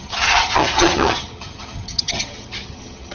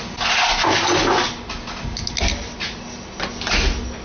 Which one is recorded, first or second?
second